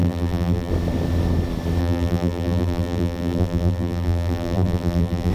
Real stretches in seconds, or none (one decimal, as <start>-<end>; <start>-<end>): 0.7-1.8